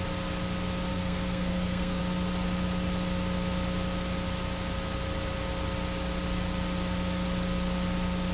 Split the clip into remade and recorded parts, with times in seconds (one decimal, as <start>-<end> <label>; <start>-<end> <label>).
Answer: 0.0-0.9 recorded; 0.9-2.0 remade; 2.0-8.3 recorded